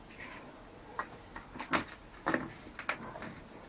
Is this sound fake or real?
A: real